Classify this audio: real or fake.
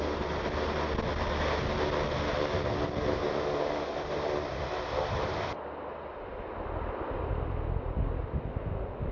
real